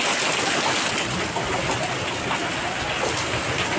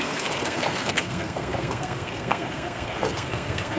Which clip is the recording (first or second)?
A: first